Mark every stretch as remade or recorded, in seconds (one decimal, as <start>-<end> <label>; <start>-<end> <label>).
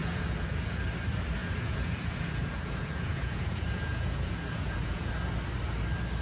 0.0-0.8 remade; 0.8-1.4 recorded; 1.4-5.1 remade; 5.1-6.2 recorded